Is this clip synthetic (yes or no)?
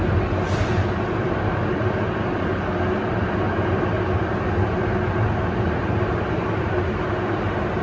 no